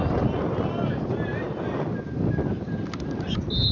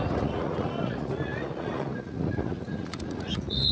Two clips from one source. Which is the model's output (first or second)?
second